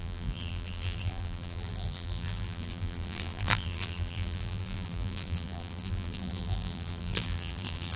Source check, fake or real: fake